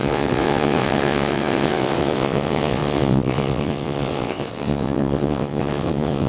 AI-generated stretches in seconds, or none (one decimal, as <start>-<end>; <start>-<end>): 0.0-6.3